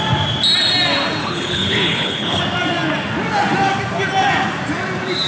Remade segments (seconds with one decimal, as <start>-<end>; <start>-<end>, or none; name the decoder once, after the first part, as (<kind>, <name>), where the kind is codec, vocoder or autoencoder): 1.2-2.4 (codec, HILCodec)